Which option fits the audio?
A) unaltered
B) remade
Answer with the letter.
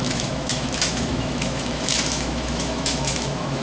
B